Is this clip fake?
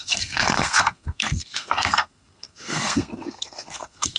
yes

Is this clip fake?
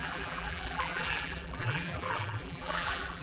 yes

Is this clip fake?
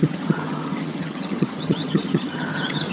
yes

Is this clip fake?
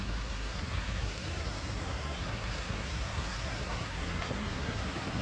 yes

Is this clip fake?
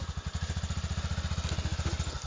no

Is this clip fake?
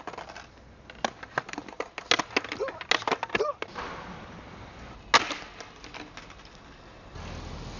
no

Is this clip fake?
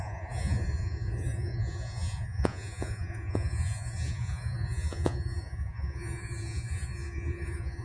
yes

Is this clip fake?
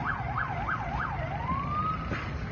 no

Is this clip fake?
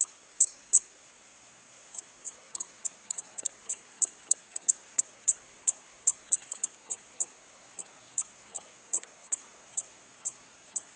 yes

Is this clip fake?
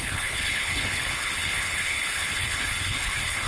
yes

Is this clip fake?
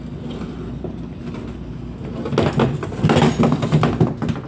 no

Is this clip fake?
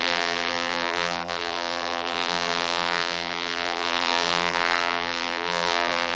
yes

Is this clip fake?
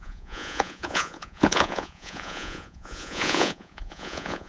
yes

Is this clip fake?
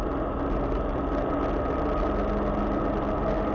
no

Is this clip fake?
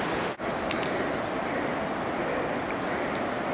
no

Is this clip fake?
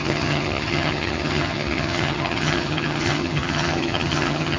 yes